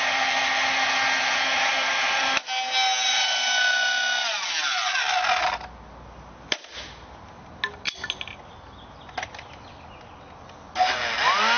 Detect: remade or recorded recorded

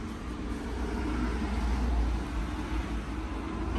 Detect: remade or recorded recorded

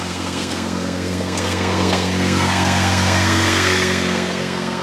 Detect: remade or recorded remade